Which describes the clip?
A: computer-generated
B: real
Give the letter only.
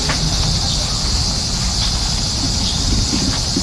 B